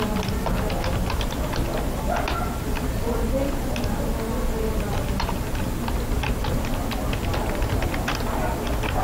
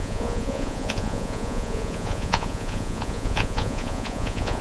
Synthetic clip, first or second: second